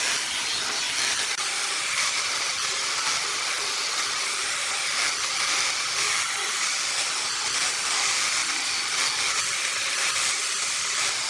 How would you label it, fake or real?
real